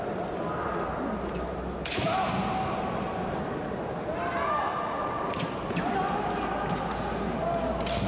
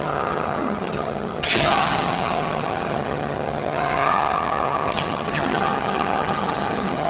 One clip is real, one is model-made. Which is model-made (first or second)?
second